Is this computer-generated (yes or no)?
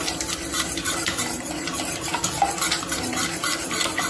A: no